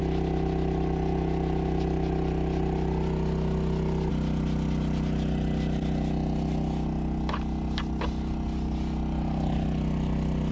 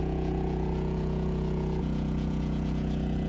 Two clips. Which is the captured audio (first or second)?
first